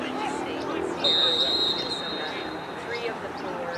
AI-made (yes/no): no